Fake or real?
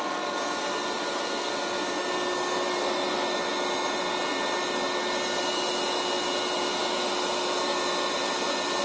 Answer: real